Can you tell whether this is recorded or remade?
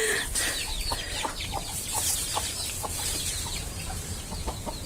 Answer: remade